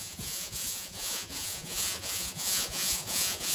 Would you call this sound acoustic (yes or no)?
no